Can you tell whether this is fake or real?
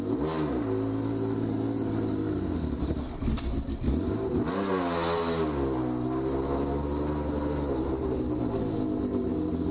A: real